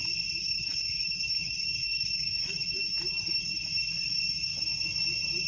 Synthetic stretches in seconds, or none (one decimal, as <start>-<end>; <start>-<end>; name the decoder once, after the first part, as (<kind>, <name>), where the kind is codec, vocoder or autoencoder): 0.4-3.6 (autoencoder, DAC-VAE)